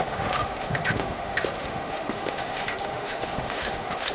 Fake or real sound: fake